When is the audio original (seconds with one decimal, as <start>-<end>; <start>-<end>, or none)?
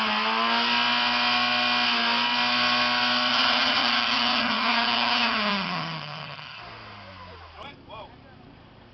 0.0-3.3; 6.6-8.9